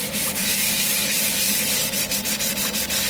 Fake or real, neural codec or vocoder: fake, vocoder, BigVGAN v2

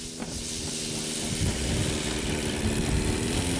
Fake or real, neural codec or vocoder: real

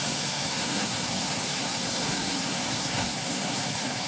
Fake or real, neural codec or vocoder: fake, codec, SNAC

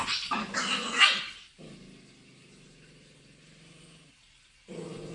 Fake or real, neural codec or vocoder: real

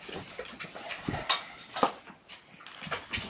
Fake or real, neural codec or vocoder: real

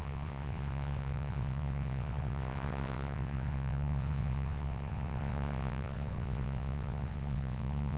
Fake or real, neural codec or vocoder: fake, vocoder, WaveNeXt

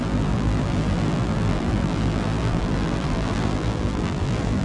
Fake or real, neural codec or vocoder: fake, vocoder, BigVGAN v2